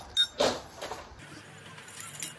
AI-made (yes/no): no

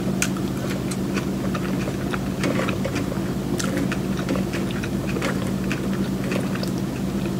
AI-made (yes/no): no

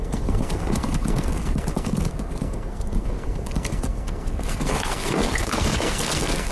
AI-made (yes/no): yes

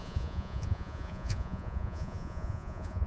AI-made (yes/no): yes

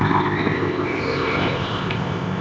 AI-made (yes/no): yes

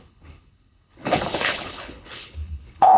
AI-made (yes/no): yes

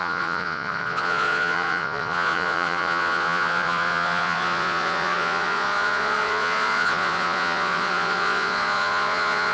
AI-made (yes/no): yes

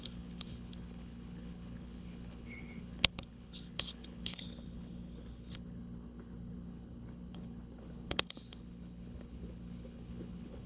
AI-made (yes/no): yes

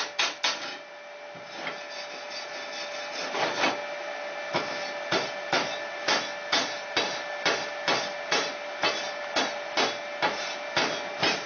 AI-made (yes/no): no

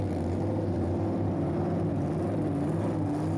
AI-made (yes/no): no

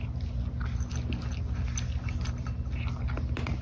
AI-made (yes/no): no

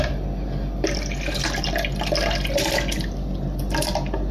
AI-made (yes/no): no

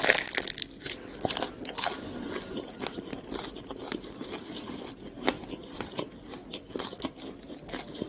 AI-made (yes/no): no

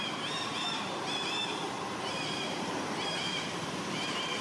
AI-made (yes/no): yes